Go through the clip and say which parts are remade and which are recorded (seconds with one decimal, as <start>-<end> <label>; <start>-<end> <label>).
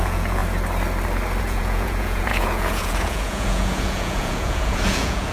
0.0-0.4 remade; 0.4-1.4 recorded; 1.4-5.3 remade